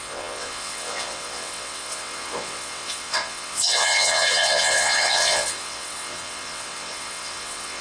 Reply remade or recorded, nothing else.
remade